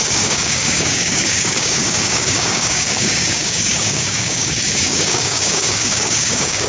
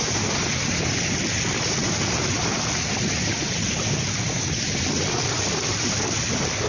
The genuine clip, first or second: second